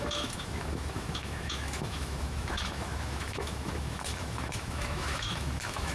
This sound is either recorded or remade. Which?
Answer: remade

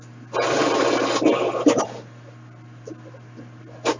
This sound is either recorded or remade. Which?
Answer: recorded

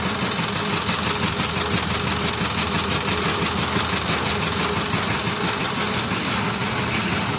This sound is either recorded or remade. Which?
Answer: recorded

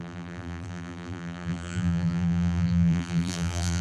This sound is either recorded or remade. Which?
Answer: remade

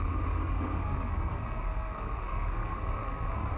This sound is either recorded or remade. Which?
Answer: remade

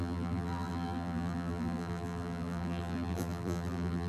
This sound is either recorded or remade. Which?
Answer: remade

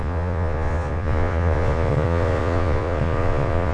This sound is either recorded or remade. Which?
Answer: remade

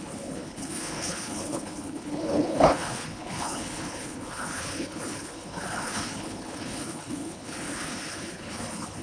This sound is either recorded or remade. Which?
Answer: remade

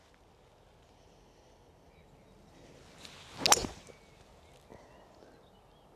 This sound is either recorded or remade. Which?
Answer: recorded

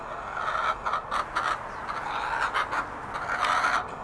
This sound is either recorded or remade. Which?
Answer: recorded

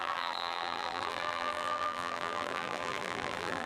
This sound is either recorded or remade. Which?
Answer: remade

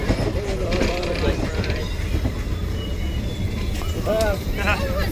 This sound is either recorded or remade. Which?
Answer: recorded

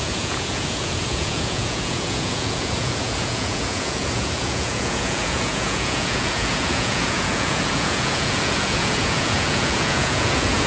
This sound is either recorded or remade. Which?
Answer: remade